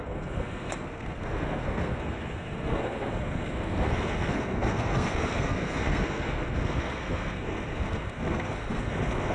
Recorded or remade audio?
remade